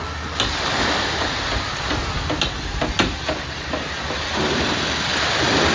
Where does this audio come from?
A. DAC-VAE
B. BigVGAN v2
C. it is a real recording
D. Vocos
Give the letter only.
C